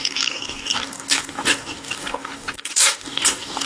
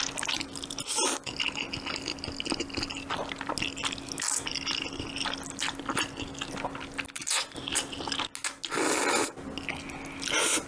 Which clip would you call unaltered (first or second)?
second